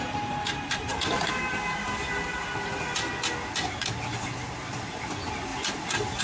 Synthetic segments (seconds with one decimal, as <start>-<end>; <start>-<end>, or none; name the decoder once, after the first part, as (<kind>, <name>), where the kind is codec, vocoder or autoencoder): none